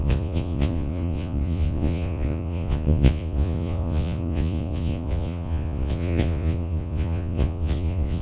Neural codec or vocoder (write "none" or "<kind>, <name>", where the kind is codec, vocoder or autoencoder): vocoder, Vocos